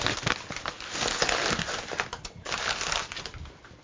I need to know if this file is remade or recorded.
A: recorded